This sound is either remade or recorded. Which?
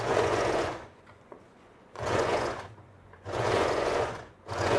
remade